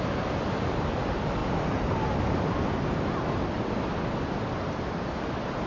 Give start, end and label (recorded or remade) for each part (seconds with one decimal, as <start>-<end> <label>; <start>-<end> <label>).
0.0-5.7 recorded